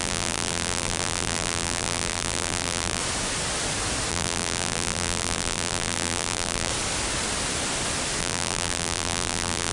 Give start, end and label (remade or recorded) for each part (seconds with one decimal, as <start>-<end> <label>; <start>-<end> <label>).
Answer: 0.0-3.0 remade; 3.0-4.1 recorded; 4.1-6.7 remade; 6.7-8.2 recorded; 8.2-9.7 remade